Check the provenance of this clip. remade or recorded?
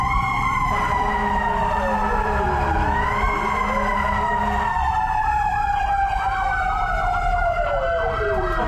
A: remade